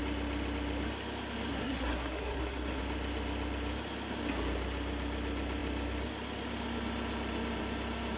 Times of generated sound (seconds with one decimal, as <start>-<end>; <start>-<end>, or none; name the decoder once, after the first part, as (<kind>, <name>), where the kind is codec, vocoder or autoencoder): 1.5-2.8 (codec, SNAC)